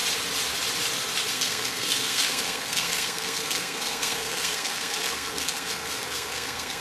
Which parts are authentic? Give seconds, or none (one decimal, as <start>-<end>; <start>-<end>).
0.0-1.3